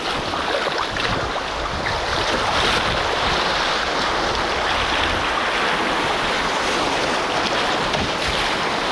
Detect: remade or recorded recorded